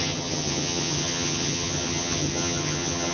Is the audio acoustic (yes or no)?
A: no